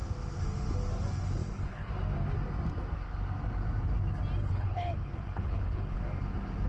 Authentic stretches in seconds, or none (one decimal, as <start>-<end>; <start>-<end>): 0.0-1.4; 1.9-4.4; 6.0-6.7

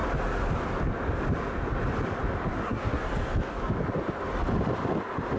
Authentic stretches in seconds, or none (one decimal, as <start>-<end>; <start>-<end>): 0.0-2.5; 3.1-5.4

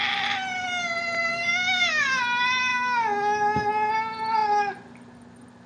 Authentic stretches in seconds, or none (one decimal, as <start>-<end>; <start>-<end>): 0.0-1.3; 2.2-2.7; 3.9-5.7